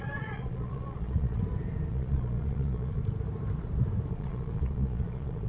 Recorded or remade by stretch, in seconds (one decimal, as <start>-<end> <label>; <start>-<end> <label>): 0.0-1.4 remade; 1.4-1.9 recorded; 1.9-3.0 remade; 3.0-4.1 recorded; 4.1-5.5 remade